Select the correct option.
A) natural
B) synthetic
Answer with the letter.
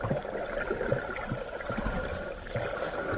A